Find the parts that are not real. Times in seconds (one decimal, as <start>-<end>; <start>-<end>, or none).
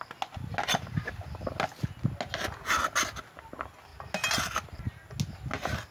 none